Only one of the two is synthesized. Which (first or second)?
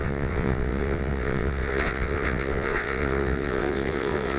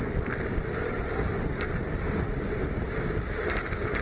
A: first